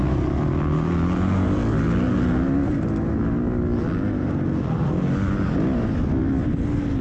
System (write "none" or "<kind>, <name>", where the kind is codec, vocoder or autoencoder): none